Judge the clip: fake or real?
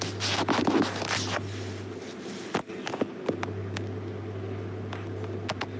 real